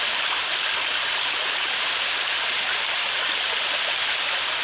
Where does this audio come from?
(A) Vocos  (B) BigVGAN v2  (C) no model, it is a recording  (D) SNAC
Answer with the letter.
C